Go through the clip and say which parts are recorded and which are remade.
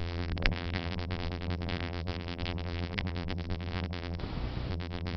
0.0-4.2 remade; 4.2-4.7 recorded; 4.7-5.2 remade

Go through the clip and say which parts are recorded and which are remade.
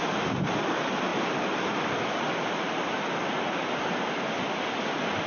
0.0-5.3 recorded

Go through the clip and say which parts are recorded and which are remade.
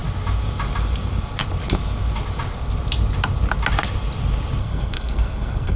0.0-4.6 recorded; 4.6-5.8 remade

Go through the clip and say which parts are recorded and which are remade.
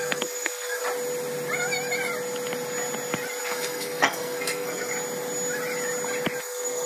0.0-0.8 remade; 0.8-3.4 recorded; 3.4-4.9 remade; 4.9-6.4 recorded; 6.4-6.9 remade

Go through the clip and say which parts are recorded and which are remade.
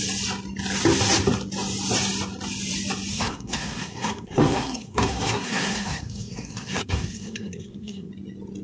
0.0-3.1 recorded; 3.1-8.1 remade; 8.1-8.6 recorded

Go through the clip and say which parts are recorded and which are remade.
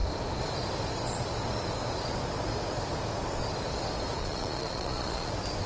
0.0-4.2 recorded; 4.2-5.3 remade; 5.3-5.7 recorded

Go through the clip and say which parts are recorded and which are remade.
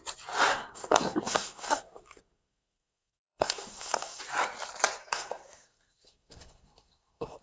0.0-0.5 recorded; 0.5-4.2 remade; 4.2-5.0 recorded; 5.0-7.4 remade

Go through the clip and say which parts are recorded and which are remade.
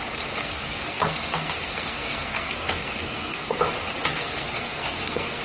0.0-0.4 recorded; 0.4-3.6 remade; 3.6-4.1 recorded; 4.1-5.4 remade